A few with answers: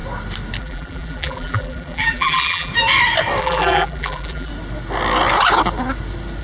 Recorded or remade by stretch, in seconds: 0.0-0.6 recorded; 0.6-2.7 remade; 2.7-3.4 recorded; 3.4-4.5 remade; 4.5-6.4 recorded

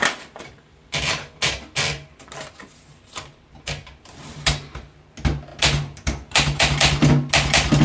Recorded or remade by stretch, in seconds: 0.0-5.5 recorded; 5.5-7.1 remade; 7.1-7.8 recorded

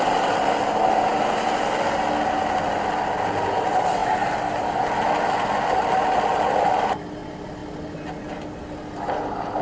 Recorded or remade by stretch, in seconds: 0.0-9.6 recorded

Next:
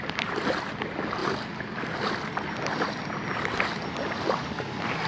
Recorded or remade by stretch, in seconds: 0.0-5.1 recorded

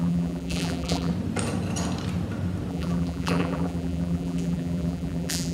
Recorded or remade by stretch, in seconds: 0.0-1.1 remade; 1.1-2.7 recorded; 2.7-5.5 remade

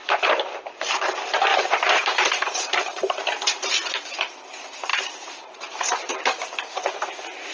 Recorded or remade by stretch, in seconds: 0.0-1.0 remade; 1.0-1.5 recorded; 1.5-3.0 remade; 3.0-4.9 recorded; 4.9-6.1 remade; 6.1-7.5 recorded

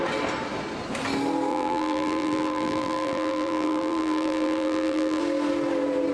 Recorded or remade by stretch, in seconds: 0.0-1.5 recorded; 1.5-5.2 remade; 5.2-6.1 recorded

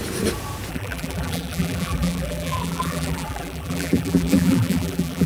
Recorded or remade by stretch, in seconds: 0.0-0.7 recorded; 0.7-5.3 remade